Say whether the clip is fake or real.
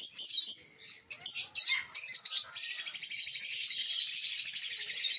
real